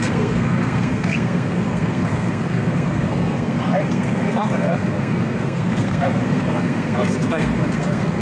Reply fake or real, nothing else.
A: fake